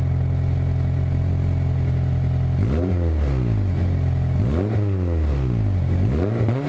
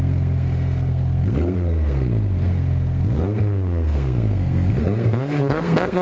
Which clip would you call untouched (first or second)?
first